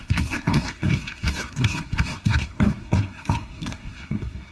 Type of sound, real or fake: fake